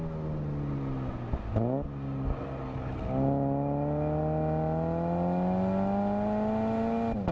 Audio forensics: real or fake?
real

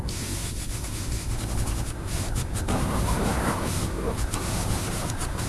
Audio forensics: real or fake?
fake